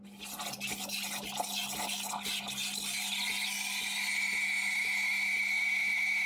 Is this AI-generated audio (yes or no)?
no